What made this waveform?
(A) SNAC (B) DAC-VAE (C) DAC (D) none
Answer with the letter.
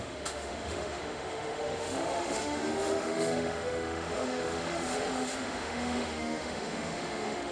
B